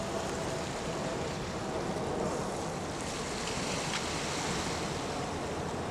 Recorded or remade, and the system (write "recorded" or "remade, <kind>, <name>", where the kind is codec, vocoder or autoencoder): recorded